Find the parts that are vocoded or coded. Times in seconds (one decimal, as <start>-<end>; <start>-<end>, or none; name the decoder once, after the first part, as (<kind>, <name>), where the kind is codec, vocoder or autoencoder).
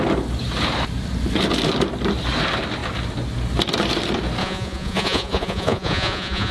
4.4-6.5 (vocoder, Vocos)